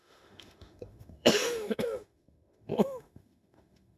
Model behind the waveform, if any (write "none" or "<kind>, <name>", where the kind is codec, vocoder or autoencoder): autoencoder, DAC-VAE